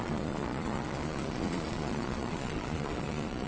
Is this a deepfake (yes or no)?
yes